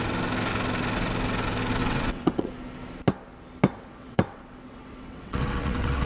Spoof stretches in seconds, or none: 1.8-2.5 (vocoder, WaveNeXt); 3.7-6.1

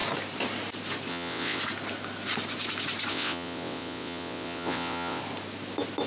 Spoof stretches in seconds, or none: 1.1-1.6 (vocoder, WaveNeXt); 3.1-5.2